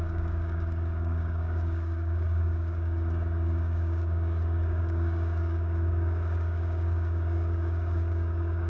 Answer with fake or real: fake